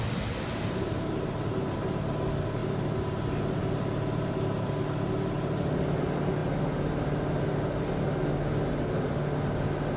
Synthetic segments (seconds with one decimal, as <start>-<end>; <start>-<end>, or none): none